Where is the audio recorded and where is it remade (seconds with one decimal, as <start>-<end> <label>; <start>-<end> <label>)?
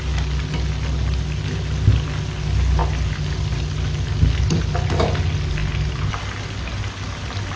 0.0-7.6 recorded